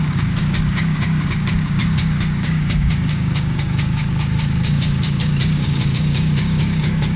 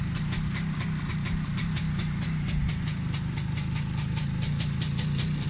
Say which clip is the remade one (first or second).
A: first